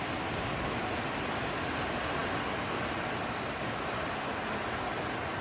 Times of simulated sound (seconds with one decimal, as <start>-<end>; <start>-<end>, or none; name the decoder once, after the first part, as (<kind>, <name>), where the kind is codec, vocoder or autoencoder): none